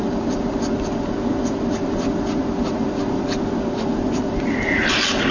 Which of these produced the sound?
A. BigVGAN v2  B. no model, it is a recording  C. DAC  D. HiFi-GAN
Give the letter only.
B